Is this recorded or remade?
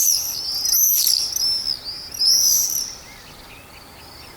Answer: recorded